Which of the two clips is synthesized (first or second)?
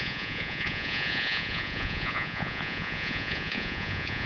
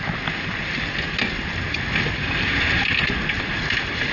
first